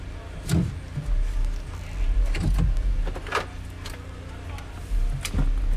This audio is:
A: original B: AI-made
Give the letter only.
A